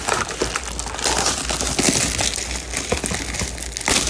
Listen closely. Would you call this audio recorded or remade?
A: recorded